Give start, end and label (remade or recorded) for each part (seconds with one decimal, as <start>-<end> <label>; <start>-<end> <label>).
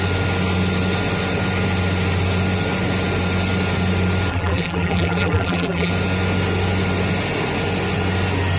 0.0-4.3 recorded; 4.3-5.9 remade; 5.9-8.6 recorded